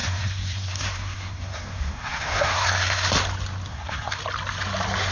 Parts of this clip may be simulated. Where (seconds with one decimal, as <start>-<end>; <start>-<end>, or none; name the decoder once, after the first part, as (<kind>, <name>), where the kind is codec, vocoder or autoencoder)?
0.0-3.1 (codec, SNAC); 3.7-4.2